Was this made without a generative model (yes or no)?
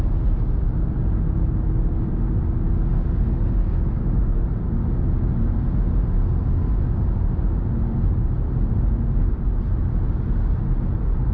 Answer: yes